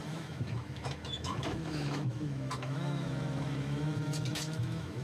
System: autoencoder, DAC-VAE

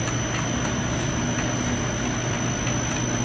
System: none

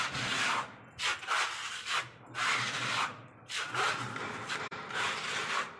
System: vocoder, BigVGAN v2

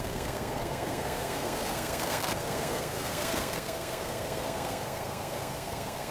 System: codec, SNAC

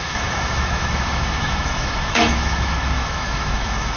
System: autoencoder, DAC-VAE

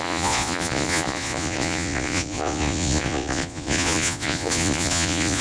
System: vocoder, Vocos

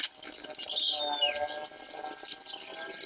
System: none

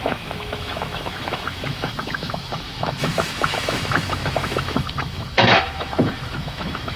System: autoencoder, DAC-VAE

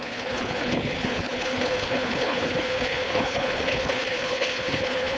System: codec, HILCodec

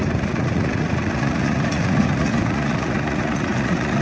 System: vocoder, Vocos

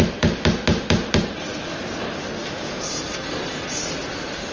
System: none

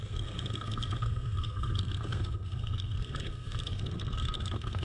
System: codec, SNAC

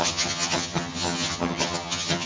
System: vocoder, HiFi-GAN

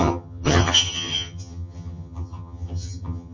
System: vocoder, HiFi-GAN